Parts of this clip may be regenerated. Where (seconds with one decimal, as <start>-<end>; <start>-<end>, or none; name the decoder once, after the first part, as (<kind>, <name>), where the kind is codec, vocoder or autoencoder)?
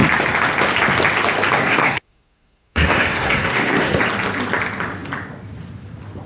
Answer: 1.6-4.0 (codec, SNAC)